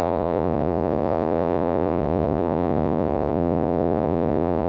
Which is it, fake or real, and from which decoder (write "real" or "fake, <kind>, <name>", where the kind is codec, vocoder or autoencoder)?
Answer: fake, vocoder, Vocos